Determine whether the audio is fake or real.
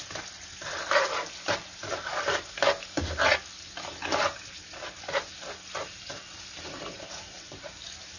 real